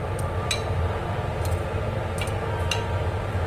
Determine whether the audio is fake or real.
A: real